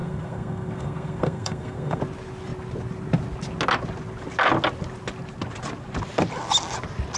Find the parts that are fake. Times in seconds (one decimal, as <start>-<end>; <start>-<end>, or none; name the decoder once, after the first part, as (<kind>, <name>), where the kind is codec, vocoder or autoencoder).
0.0-2.0 (codec, SNAC)